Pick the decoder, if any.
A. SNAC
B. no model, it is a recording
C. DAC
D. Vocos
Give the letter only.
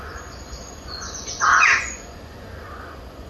D